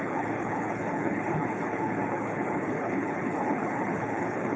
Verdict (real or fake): fake